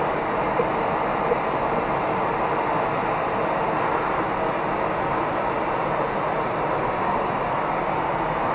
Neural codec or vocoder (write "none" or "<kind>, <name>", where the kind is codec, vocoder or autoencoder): none